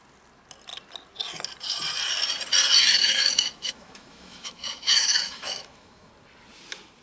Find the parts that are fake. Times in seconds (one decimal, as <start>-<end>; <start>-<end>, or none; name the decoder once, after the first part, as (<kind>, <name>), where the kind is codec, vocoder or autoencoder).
3.0-6.1 (autoencoder, DAC-VAE)